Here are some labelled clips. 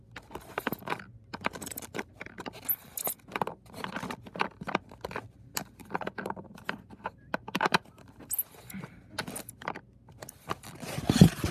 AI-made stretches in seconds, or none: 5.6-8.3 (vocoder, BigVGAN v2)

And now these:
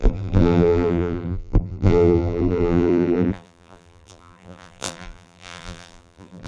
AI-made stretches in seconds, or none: 0.0-6.5 (vocoder, BigVGAN v2)

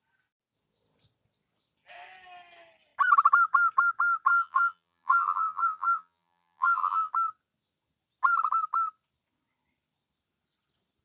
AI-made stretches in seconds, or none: 4.3-7.1 (vocoder, BigVGAN v2)

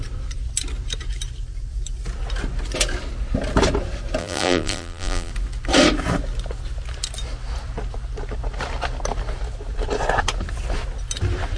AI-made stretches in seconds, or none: 4.2-5.3 (vocoder, BigVGAN v2)

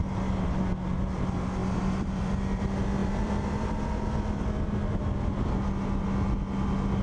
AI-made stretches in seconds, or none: 1.6-2.6 (vocoder, BigVGAN v2); 3.0-4.4